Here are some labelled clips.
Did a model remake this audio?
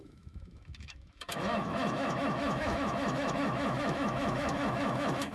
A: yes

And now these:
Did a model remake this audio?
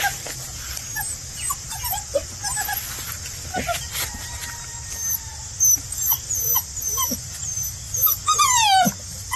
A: no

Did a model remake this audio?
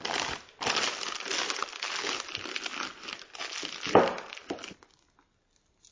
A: no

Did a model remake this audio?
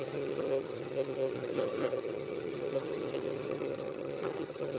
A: yes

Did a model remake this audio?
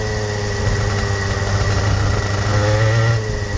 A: no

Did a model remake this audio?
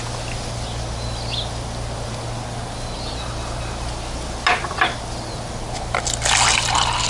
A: no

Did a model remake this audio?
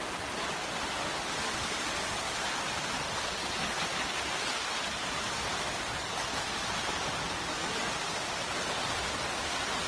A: no